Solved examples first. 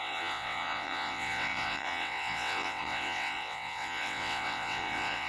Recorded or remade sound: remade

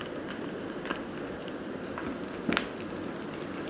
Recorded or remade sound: recorded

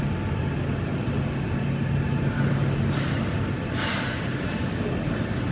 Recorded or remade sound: recorded